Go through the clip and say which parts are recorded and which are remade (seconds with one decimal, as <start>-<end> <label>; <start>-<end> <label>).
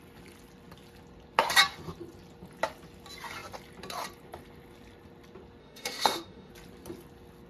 0.0-5.6 recorded; 5.6-6.5 remade; 6.5-7.5 recorded